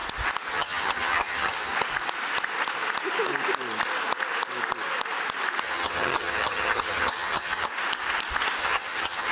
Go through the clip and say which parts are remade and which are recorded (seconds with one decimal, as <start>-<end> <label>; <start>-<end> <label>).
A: 0.0-0.5 recorded; 0.5-1.7 remade; 1.7-5.6 recorded; 5.6-7.7 remade; 7.7-8.6 recorded; 8.6-9.3 remade